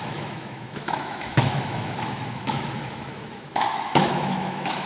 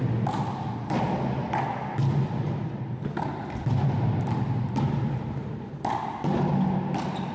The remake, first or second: first